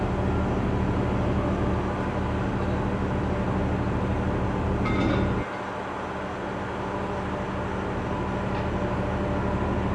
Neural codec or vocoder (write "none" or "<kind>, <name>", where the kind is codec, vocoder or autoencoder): none